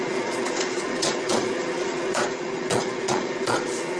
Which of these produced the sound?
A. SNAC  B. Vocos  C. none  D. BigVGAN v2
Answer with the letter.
B